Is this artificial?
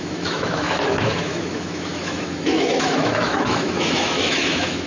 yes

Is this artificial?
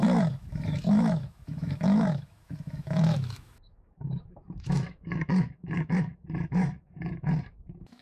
yes